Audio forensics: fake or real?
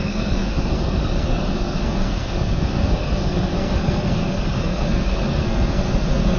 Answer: fake